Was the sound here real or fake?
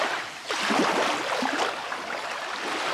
real